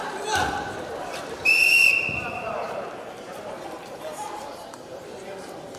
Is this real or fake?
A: fake